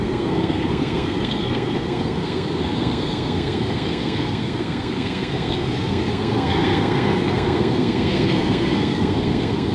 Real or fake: fake